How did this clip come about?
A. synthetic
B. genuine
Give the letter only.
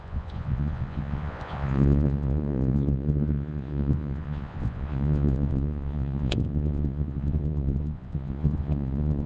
A